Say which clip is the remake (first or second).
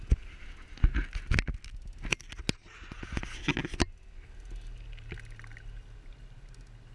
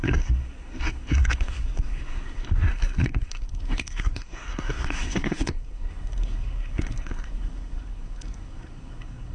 second